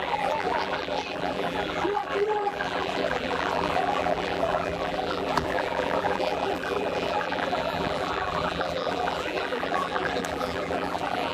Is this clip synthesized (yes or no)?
yes